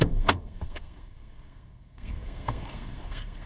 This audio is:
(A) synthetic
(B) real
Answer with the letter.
A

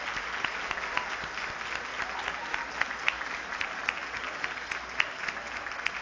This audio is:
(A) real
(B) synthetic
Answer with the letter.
A